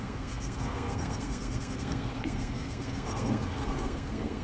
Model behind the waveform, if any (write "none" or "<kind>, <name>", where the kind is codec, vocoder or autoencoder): codec, SNAC